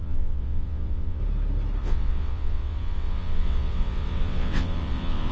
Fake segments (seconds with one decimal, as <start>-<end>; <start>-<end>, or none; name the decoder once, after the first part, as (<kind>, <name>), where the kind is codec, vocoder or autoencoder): 0.0-1.2 (vocoder, WaveNeXt); 1.8-5.3